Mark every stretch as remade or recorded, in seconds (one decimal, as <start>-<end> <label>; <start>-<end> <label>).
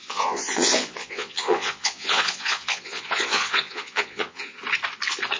0.0-4.6 remade; 4.6-5.4 recorded